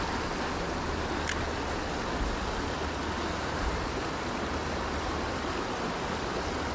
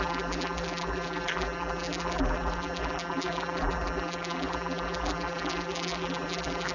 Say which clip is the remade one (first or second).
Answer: second